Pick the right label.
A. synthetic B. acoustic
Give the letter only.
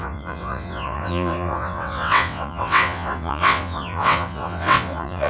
A